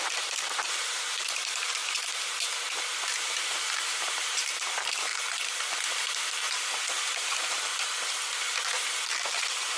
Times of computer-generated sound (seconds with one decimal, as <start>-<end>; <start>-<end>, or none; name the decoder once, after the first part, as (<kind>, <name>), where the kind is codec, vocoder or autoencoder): 0.0-1.8 (vocoder, BigVGAN v2); 2.9-5.1; 7.0-7.7; 9.1-9.8